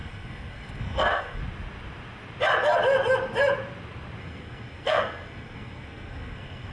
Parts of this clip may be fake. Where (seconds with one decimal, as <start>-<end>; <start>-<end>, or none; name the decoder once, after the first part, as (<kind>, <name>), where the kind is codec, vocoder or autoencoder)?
0.0-1.4 (codec, SNAC); 4.2-6.7